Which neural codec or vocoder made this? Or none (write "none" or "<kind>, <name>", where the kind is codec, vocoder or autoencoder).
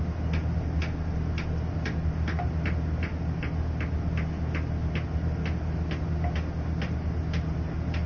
none